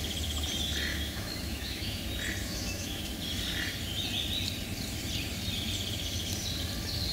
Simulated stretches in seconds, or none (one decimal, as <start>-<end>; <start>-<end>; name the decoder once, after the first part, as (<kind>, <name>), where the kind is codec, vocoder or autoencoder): 0.9-2.0 (autoencoder, DAC-VAE); 2.4-3.0